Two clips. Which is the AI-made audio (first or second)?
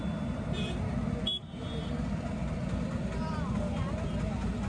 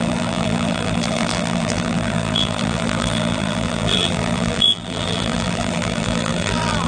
second